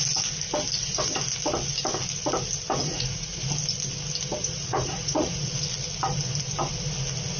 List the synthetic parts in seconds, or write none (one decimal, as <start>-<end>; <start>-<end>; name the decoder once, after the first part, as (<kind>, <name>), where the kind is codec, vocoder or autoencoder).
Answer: 2.8-3.4 (vocoder, Vocos); 4.4-5.5